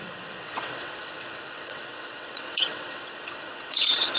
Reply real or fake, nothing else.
fake